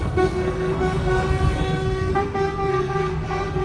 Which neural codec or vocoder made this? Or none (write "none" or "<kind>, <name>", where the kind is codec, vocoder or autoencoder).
codec, SNAC